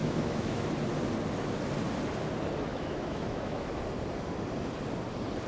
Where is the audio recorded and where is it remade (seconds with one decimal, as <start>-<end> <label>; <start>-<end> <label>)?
0.0-0.7 remade; 0.7-2.7 recorded; 2.7-3.8 remade; 3.8-5.5 recorded